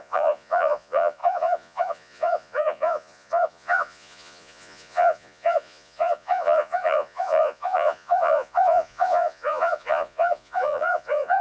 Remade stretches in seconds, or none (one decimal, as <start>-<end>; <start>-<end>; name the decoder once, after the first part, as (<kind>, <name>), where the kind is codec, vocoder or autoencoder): 0.0-11.4 (vocoder, Vocos)